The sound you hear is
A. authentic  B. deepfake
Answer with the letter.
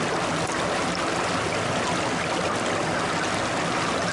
A